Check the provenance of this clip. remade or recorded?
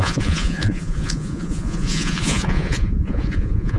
remade